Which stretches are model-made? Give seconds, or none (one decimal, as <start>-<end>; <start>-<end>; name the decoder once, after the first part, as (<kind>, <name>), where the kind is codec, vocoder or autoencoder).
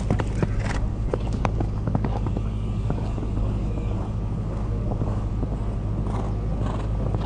0.9-5.3 (codec, DAC)